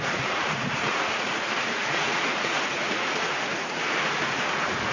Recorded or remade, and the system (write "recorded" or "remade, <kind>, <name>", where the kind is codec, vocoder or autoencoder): remade, vocoder, Vocos